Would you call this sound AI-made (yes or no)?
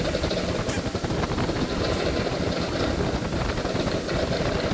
no